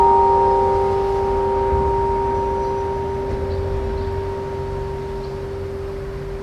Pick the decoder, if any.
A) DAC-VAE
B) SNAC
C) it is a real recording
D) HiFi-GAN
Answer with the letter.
C